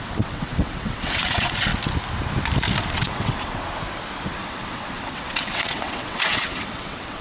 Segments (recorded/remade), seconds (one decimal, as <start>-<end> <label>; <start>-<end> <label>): 0.0-1.7 remade; 1.7-2.8 recorded; 2.8-3.6 remade; 3.6-4.4 recorded; 4.4-7.2 remade